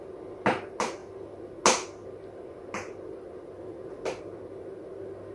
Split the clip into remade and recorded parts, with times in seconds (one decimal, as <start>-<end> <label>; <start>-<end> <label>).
0.0-5.3 recorded